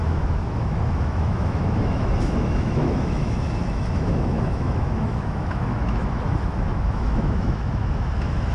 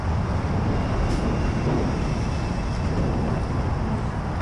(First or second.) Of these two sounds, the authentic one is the second